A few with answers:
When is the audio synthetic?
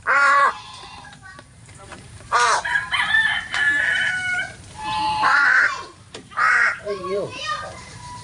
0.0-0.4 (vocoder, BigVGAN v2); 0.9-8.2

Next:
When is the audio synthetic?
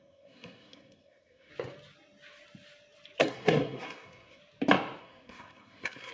0.0-1.5 (codec, SNAC); 3.2-4.4; 5.0-6.1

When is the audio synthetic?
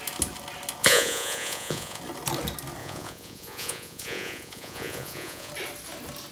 0.8-2.0 (vocoder, Vocos); 2.8-5.5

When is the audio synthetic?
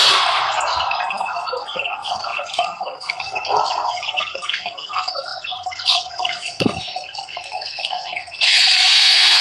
0.0-9.4 (codec, SNAC)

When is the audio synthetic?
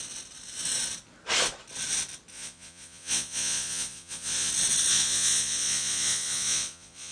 2.3-4.5 (vocoder, Vocos); 4.9-7.1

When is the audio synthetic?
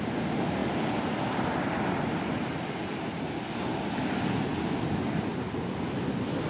none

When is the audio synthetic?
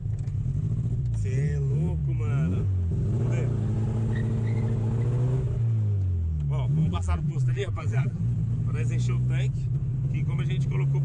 6.8-8.2 (vocoder, BigVGAN v2)